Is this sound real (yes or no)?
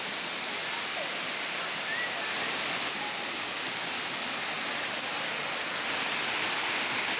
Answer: yes